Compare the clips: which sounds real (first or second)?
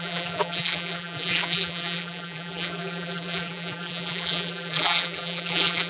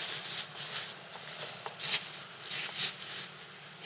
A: second